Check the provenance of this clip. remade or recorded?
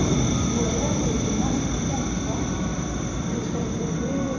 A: remade